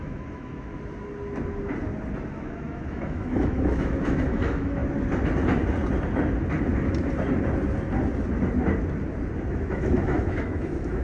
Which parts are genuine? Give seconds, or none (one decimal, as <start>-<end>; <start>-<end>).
0.7-2.3; 4.8-9.5